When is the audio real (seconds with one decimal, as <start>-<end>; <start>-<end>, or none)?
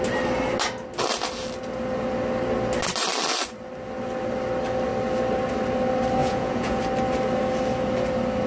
0.0-6.2; 6.8-8.5